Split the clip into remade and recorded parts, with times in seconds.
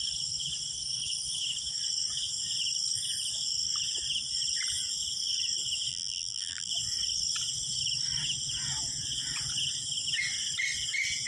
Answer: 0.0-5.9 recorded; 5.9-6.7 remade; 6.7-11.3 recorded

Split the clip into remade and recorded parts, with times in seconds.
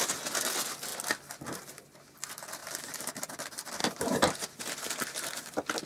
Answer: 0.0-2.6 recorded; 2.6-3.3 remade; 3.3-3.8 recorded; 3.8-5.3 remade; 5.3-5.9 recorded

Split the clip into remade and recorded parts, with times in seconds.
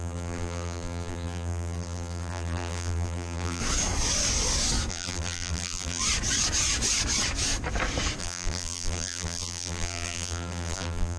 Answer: 0.0-3.6 remade; 3.6-4.9 recorded; 4.9-6.0 remade; 6.0-8.2 recorded; 8.2-11.2 remade